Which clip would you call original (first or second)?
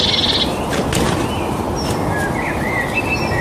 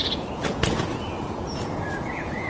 first